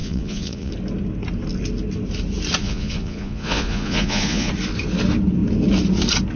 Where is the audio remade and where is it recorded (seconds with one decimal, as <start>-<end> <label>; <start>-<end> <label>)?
0.0-0.7 remade; 0.7-2.6 recorded; 2.6-4.5 remade; 4.5-6.4 recorded